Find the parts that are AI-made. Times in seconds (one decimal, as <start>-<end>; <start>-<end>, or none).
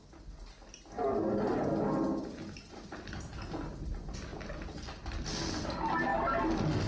none